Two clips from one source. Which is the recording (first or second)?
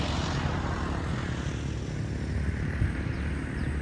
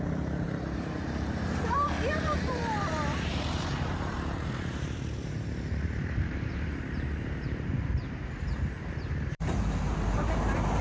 first